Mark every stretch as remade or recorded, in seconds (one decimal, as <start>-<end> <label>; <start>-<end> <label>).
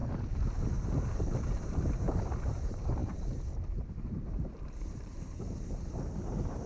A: 0.0-0.6 recorded; 0.6-6.7 remade